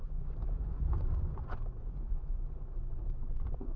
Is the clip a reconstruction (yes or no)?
yes